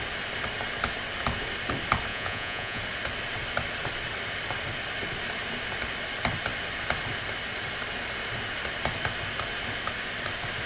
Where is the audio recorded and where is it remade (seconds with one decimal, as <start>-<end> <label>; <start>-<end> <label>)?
0.0-2.1 recorded; 2.1-2.8 remade; 2.8-10.7 recorded